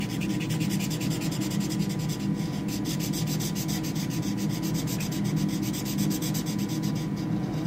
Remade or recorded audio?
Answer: recorded